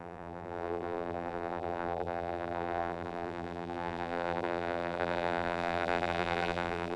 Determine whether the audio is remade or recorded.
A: remade